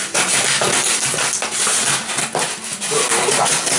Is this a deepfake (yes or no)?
no